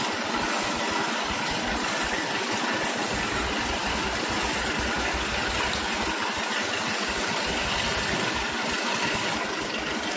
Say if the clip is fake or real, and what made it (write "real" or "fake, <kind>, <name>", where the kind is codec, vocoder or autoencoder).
real